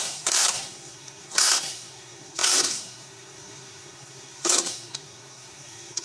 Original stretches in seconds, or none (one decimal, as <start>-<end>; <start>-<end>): none